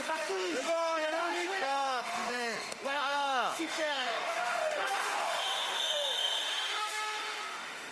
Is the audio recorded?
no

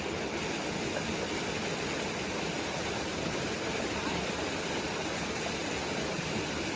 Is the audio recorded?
yes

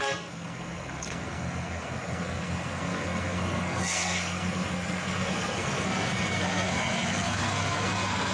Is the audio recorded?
no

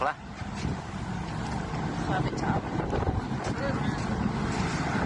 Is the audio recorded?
yes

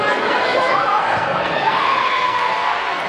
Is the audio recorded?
no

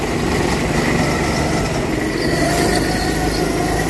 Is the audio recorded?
yes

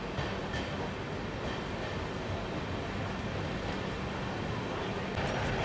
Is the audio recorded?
yes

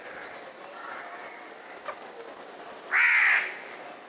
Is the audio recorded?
yes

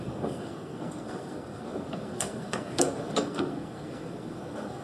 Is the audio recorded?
no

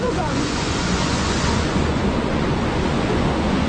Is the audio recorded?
no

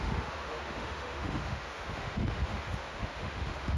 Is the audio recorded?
no